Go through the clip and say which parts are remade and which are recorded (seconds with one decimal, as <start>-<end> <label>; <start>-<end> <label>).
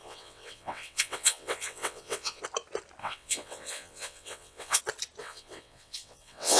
0.0-2.4 remade; 2.4-3.0 recorded; 3.0-4.8 remade; 4.8-5.2 recorded; 5.2-6.6 remade